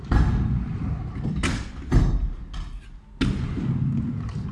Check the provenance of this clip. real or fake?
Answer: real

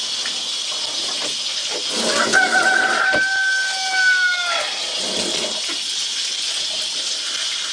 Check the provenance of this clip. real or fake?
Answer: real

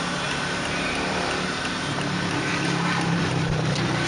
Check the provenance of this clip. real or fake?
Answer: fake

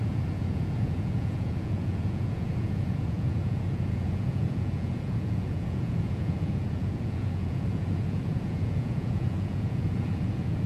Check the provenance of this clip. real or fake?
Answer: fake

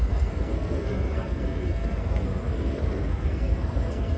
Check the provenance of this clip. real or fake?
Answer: fake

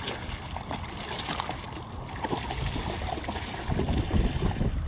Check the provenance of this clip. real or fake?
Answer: real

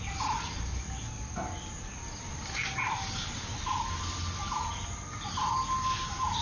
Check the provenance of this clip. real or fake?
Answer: real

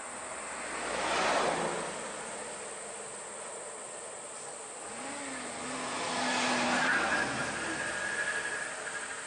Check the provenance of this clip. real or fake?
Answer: real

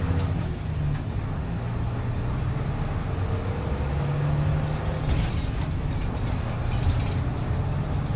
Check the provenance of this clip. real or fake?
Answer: real